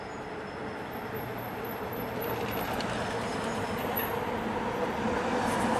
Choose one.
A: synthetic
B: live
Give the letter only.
B